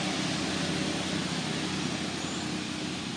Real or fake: real